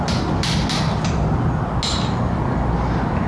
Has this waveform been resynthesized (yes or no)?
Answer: no